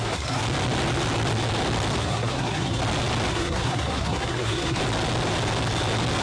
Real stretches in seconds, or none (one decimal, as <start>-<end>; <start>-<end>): 0.4-2.0; 2.8-3.3; 4.8-6.2

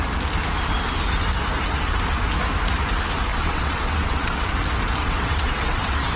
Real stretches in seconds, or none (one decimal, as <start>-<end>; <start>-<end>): 0.0-3.3; 4.5-5.0

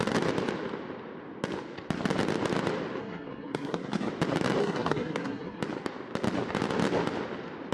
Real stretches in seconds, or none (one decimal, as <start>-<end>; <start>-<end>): 0.0-3.0; 4.1-4.6; 5.6-7.7